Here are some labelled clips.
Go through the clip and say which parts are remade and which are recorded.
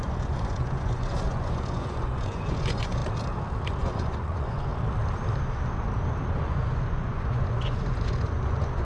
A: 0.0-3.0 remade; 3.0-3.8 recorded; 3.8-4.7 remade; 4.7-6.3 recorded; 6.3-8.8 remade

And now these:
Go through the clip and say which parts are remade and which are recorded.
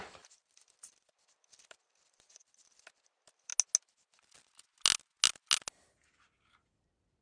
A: 0.0-3.5 remade; 3.5-6.7 recorded; 6.7-7.2 remade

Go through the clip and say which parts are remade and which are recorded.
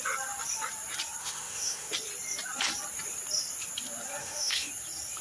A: 0.0-1.2 recorded; 1.2-1.9 remade; 1.9-4.2 recorded; 4.2-4.7 remade; 4.7-5.2 recorded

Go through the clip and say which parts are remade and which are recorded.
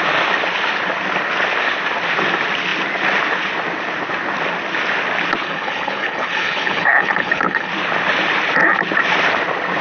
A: 0.0-5.4 recorded; 5.4-7.7 remade; 7.7-9.8 recorded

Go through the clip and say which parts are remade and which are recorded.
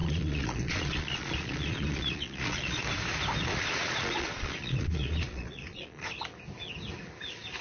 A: 0.0-2.8 remade; 2.8-3.5 recorded; 3.5-6.1 remade; 6.1-7.6 recorded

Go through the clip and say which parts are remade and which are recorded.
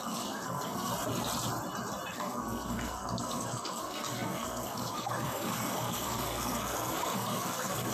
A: 0.0-0.9 remade; 0.9-2.1 recorded; 2.1-7.9 remade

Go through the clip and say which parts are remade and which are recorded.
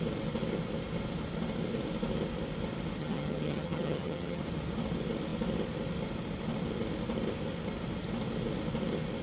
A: 0.0-3.0 recorded; 3.0-4.4 remade; 4.4-9.2 recorded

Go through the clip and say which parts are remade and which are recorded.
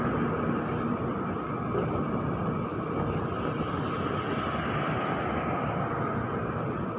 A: 0.0-7.0 recorded